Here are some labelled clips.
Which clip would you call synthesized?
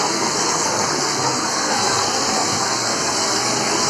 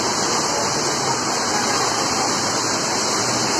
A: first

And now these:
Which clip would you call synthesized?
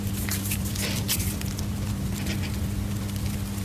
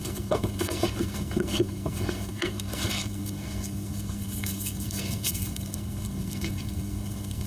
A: second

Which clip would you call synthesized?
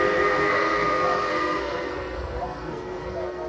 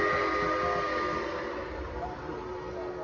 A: first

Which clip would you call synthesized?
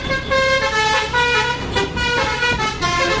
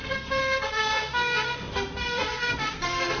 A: second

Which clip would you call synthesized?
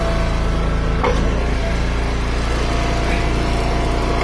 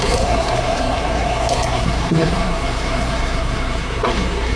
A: second